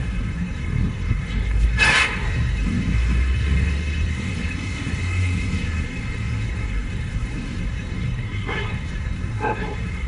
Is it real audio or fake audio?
fake